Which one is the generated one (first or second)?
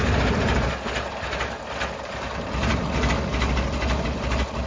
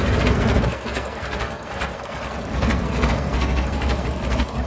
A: second